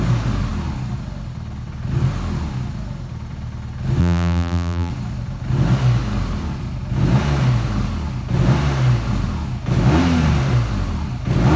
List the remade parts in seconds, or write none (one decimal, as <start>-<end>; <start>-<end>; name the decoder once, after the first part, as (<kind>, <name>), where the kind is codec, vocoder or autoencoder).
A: 4.0-4.9 (vocoder, BigVGAN v2)